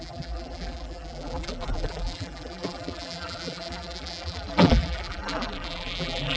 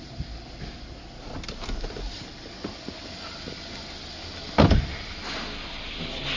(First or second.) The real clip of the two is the second